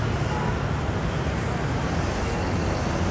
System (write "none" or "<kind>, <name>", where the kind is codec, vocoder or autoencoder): none